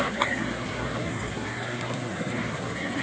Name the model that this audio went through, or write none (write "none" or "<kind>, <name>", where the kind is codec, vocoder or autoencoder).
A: codec, SNAC